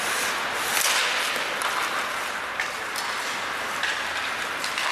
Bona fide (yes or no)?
yes